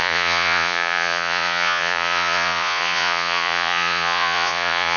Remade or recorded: remade